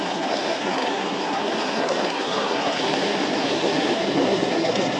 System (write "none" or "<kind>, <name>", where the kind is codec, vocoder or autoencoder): codec, SNAC